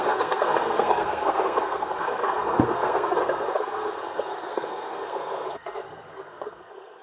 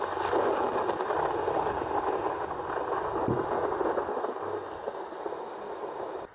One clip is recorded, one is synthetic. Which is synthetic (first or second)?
first